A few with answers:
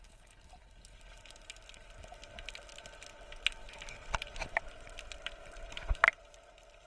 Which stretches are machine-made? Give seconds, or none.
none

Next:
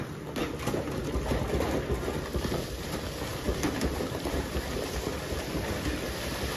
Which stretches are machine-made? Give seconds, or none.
2.3-2.9 (vocoder, BigVGAN v2); 3.3-5.0

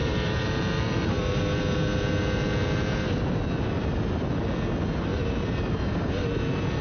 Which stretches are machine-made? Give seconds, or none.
0.0-1.4 (vocoder, BigVGAN v2); 5.1-6.8

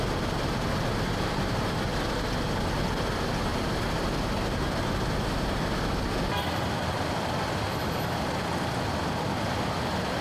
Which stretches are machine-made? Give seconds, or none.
none

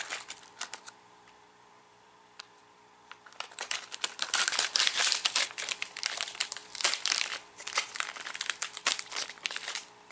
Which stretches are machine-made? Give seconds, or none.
0.0-2.6 (vocoder, BigVGAN v2); 4.8-10.1

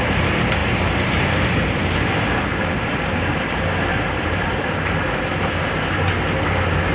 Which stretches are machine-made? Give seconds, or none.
3.9-6.1 (vocoder, BigVGAN v2)

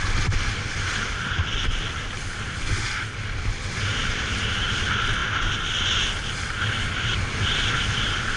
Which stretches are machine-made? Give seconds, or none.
4.0-4.8 (vocoder, BigVGAN v2)

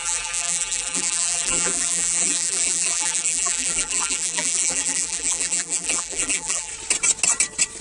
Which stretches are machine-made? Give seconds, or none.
0.0-6.7 (vocoder, BigVGAN v2)